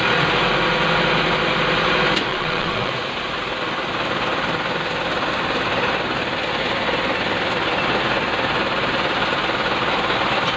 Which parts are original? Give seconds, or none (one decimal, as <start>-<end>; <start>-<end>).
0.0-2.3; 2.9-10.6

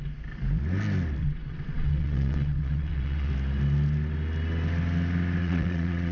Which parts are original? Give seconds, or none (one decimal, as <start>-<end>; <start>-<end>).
0.0-1.2; 3.3-5.4

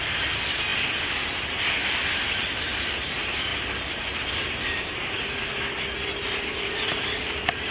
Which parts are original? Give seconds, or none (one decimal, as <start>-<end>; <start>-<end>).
0.0-7.7

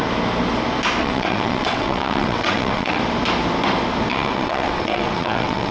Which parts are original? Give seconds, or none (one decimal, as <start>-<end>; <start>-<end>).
0.0-1.0; 3.0-4.1

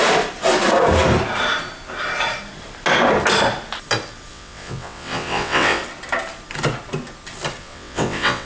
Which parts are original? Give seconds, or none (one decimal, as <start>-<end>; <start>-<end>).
0.0-4.3; 5.8-7.6

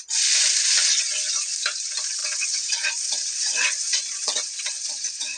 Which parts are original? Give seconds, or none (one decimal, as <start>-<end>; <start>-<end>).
0.0-2.2